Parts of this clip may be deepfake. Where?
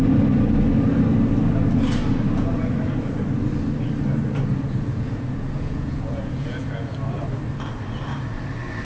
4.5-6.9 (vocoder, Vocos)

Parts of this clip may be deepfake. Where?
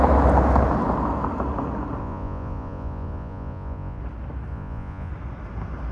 2.0-4.0 (vocoder, Vocos); 4.5-5.1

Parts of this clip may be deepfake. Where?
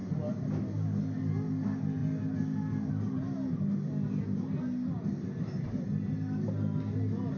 none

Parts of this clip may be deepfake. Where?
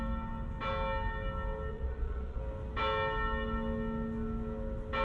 1.7-2.4 (vocoder, Vocos)